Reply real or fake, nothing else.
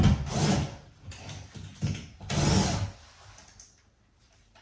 real